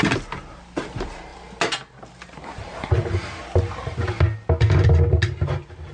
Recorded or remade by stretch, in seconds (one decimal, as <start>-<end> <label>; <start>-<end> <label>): 0.0-5.9 recorded